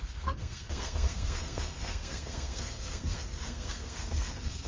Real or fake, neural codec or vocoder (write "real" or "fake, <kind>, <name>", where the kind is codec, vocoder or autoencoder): fake, codec, SNAC